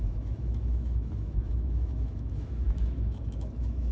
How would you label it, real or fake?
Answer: fake